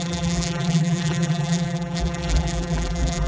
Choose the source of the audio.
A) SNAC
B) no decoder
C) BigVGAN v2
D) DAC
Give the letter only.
C